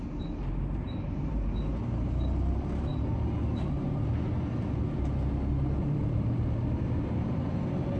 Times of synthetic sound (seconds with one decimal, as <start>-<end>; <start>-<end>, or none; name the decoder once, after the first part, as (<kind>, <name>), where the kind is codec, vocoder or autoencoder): 0.0-2.9 (vocoder, BigVGAN v2); 5.5-8.0